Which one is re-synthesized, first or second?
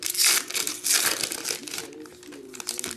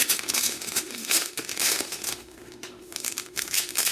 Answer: second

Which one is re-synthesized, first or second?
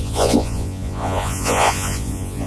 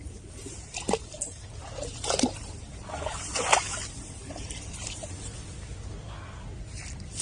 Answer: first